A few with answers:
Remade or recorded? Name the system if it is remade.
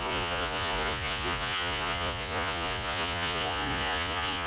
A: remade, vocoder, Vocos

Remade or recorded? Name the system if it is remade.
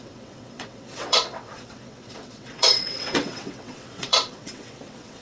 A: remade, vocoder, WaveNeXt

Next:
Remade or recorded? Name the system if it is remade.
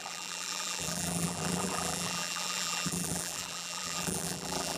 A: remade, vocoder, BigVGAN v2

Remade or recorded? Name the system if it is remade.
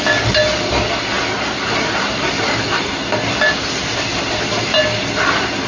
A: recorded